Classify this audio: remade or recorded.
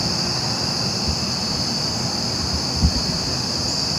recorded